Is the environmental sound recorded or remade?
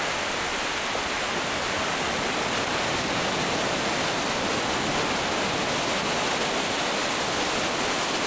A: recorded